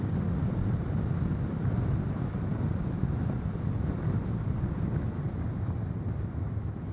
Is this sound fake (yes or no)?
no